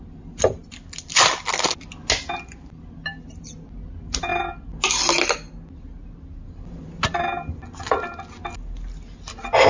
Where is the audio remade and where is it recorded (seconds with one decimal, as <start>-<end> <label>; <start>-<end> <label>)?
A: 0.0-9.7 recorded